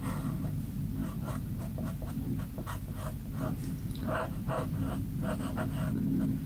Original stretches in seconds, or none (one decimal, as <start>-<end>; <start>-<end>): 0.0-1.0; 2.1-4.0; 4.9-6.5